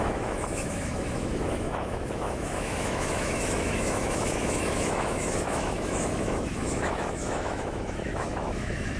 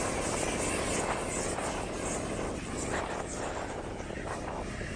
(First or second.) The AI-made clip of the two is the first